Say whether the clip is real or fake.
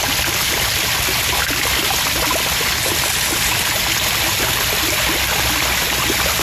real